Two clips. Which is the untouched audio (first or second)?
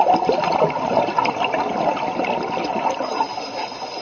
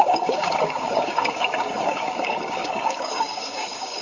first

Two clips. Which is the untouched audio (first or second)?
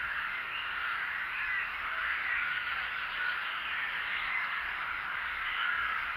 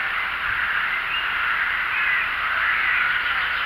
second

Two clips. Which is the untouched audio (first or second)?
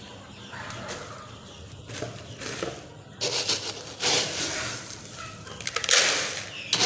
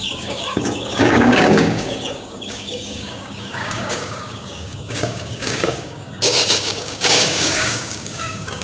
first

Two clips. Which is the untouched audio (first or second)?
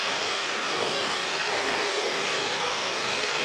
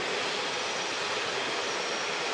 second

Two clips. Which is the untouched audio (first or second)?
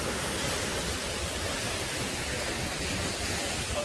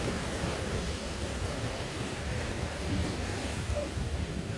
first